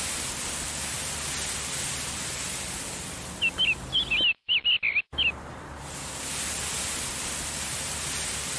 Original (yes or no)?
yes